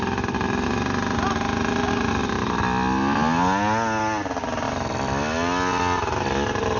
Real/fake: real